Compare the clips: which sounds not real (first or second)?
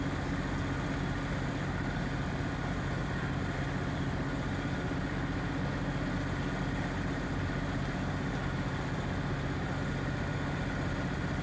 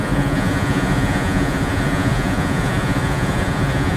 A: second